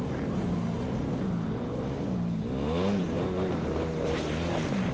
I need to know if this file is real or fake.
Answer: real